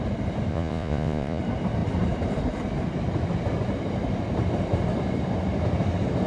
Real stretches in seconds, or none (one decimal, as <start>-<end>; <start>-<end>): 0.0-0.5; 1.4-6.3